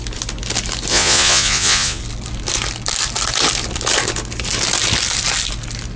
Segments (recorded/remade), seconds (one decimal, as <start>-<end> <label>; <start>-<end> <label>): 0.0-0.9 recorded; 0.9-2.0 remade; 2.0-6.0 recorded